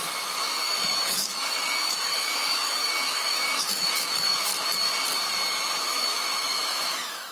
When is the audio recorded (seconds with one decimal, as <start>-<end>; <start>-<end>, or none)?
4.5-5.8